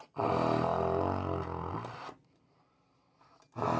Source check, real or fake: real